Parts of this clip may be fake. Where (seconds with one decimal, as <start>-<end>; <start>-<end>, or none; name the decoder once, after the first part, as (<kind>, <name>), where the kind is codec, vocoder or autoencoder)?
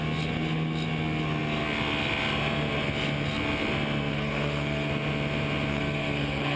4.1-4.9 (codec, SNAC); 5.7-6.6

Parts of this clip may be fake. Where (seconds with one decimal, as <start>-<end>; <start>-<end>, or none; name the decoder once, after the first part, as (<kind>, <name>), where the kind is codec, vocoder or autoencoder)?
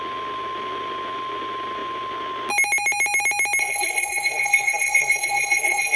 3.6-6.0 (codec, SNAC)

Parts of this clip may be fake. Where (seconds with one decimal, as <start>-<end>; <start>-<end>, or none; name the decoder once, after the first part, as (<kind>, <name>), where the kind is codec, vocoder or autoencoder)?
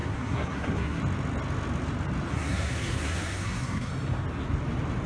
0.0-1.0 (codec, SNAC); 2.3-3.9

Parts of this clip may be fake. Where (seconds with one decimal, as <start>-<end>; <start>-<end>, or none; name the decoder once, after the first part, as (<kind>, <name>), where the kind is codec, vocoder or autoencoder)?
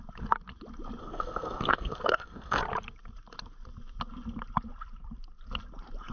1.0-2.6 (codec, SNAC)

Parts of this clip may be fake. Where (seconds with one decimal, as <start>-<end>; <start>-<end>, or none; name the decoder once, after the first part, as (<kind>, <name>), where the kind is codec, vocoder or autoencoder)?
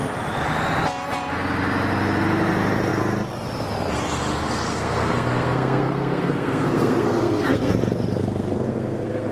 4.7-7.7 (codec, SNAC); 8.2-9.3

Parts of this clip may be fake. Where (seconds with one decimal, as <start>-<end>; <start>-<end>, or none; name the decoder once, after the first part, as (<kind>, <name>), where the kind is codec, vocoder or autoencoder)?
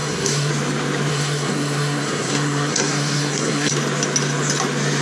0.0-0.5 (codec, SNAC); 1.1-3.7